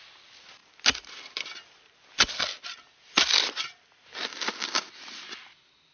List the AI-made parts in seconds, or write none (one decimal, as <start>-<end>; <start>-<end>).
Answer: none